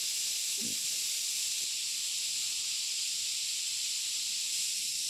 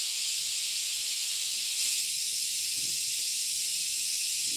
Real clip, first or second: first